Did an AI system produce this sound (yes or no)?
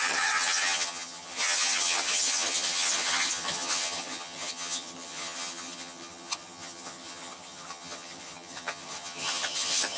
yes